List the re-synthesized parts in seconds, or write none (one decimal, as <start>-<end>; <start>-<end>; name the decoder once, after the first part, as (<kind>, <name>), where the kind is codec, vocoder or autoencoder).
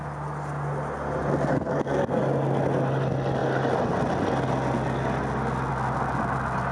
1.5-2.2 (codec, SNAC)